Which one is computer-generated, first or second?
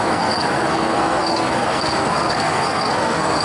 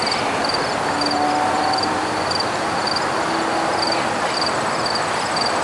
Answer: first